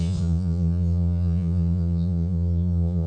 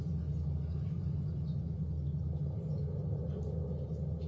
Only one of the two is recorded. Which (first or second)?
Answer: second